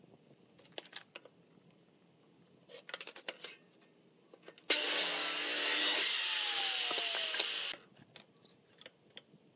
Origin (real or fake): real